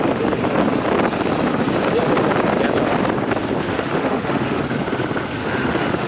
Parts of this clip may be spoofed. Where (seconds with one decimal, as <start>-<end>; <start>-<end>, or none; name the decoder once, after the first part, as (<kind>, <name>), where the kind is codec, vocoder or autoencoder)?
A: 3.7-4.6 (autoencoder, DAC-VAE); 5.4-6.1